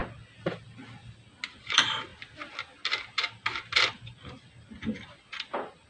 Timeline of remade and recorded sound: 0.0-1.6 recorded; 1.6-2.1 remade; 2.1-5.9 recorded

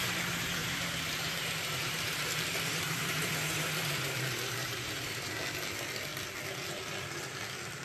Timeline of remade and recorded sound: 0.0-0.6 recorded; 0.6-5.3 remade; 5.3-7.8 recorded

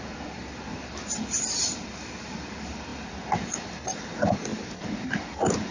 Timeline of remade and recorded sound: 0.0-2.9 remade; 2.9-3.4 recorded; 3.4-4.5 remade; 4.5-5.7 recorded

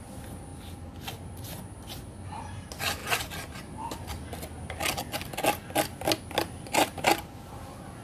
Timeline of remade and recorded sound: 0.0-8.0 recorded

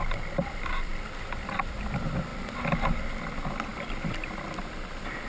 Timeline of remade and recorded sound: 0.0-5.3 recorded

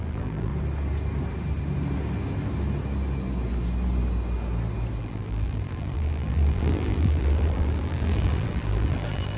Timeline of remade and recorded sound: 0.0-0.5 remade; 0.5-5.0 recorded; 5.0-9.4 remade

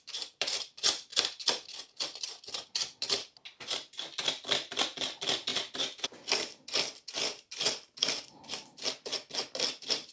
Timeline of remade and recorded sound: 0.0-1.1 remade; 1.1-2.0 recorded; 2.0-5.5 remade; 5.5-9.3 recorded; 9.3-10.1 remade

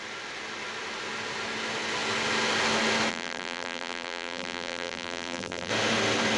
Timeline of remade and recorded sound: 0.0-3.1 recorded; 3.1-5.7 remade; 5.7-6.4 recorded